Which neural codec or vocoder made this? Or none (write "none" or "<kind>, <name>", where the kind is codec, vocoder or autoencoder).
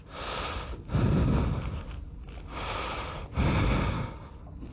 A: none